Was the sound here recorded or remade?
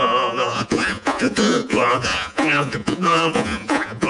remade